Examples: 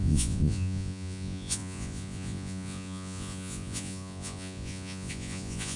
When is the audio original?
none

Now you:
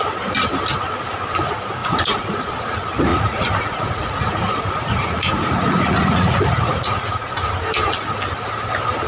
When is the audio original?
0.0-1.8; 2.5-3.1; 7.5-9.1

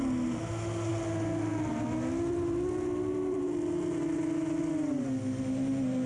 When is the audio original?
0.0-6.1

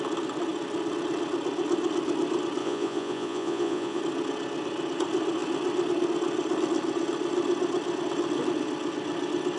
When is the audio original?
0.0-2.6; 4.0-9.6

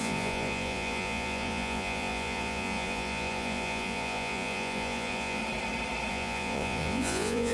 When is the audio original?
5.4-6.1

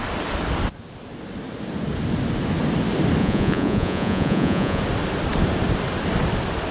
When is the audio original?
0.0-3.2; 4.8-6.7

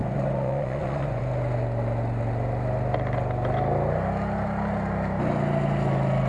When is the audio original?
1.2-6.3